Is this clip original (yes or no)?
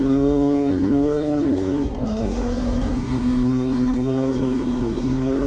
no